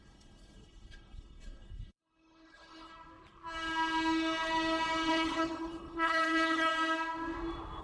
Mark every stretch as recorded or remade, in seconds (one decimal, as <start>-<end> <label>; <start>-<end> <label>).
0.0-2.9 remade; 2.9-5.1 recorded; 5.1-6.7 remade; 6.7-7.8 recorded